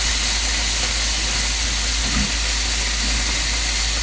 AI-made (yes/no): no